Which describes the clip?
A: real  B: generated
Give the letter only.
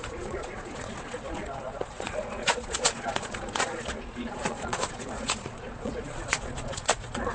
B